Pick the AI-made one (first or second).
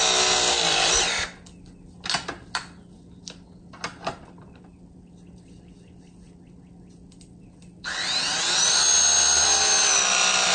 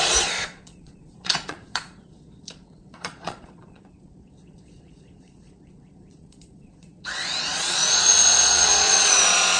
second